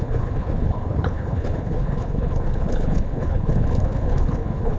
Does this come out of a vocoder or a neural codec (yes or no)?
yes